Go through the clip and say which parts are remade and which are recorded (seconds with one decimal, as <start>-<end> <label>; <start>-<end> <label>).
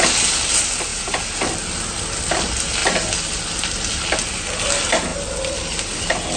0.0-6.4 recorded